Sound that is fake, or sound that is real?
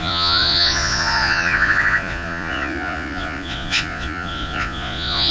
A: fake